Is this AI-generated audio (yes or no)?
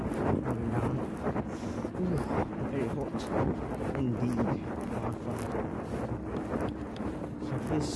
no